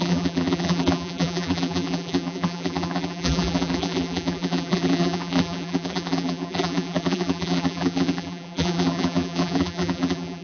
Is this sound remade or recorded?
remade